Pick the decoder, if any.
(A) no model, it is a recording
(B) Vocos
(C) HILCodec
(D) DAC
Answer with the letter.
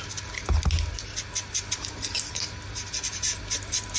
A